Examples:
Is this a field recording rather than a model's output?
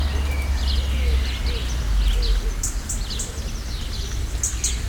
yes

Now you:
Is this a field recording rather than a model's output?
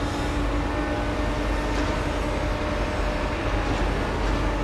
yes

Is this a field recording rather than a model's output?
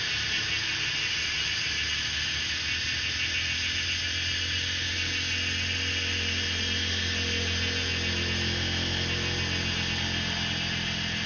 yes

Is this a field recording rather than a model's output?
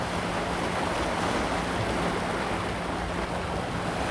yes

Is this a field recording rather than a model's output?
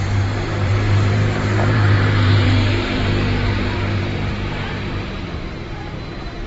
no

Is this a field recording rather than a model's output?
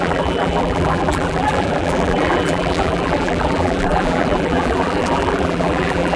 no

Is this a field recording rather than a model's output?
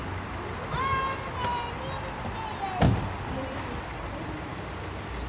yes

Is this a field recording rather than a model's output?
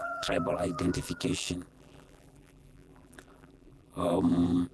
no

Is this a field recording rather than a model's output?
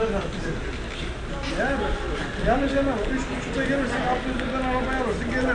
yes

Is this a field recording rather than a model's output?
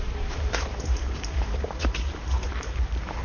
no